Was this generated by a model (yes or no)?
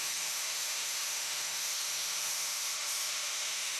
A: yes